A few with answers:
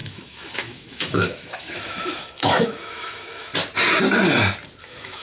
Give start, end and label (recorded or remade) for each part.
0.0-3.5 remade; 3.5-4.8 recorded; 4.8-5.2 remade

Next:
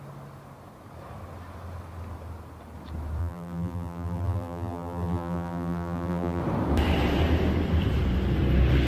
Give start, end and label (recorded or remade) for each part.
0.0-3.2 recorded; 3.2-6.4 remade; 6.4-8.9 recorded

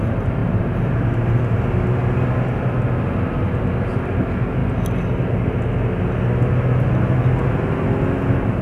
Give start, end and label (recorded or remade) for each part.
0.0-0.4 recorded; 0.4-1.6 remade; 1.6-8.6 recorded

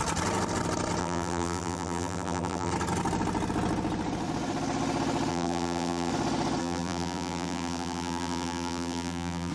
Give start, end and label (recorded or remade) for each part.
0.0-1.0 recorded; 1.0-2.7 remade; 2.7-5.3 recorded; 5.3-6.1 remade; 6.1-6.6 recorded; 6.6-9.5 remade